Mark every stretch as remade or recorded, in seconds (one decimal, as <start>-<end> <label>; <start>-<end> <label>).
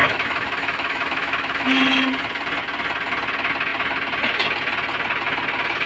0.0-1.8 remade; 1.8-5.9 recorded